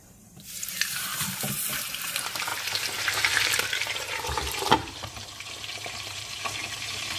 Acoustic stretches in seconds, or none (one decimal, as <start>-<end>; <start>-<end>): 1.1-2.0; 2.5-3.0